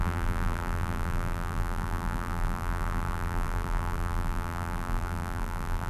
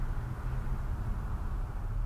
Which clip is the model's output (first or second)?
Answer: first